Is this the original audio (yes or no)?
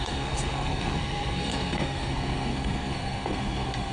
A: no